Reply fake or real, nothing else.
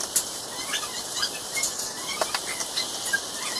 real